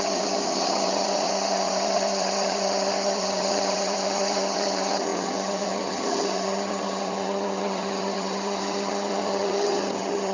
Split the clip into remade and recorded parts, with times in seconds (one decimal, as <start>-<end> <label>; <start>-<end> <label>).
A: 0.0-10.3 remade